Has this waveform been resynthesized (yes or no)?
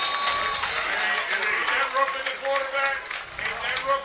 no